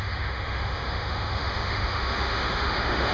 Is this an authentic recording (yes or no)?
no